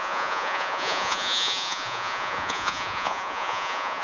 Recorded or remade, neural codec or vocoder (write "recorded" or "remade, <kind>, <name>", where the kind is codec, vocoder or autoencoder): remade, vocoder, Vocos